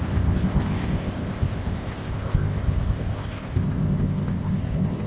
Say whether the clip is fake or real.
fake